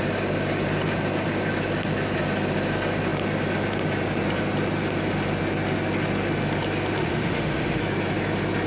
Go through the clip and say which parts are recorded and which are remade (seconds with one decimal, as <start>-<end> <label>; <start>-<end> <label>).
0.0-7.0 recorded; 7.0-7.8 remade; 7.8-8.7 recorded

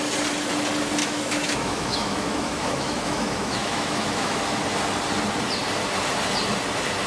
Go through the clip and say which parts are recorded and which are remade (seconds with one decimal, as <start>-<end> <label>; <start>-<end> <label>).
0.0-1.0 recorded; 1.0-4.4 remade; 4.4-7.1 recorded

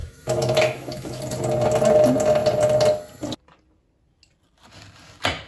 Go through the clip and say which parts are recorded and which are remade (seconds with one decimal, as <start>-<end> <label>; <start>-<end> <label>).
0.0-1.2 remade; 1.2-5.5 recorded

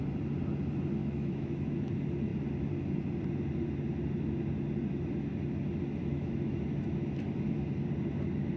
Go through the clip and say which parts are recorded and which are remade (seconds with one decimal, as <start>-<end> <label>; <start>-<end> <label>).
0.0-1.0 recorded; 1.0-1.9 remade; 1.9-6.0 recorded; 6.0-6.6 remade; 6.6-8.6 recorded

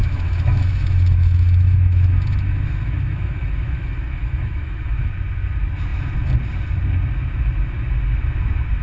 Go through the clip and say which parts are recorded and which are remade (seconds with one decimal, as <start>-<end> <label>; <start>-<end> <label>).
0.0-5.1 remade; 5.1-8.8 recorded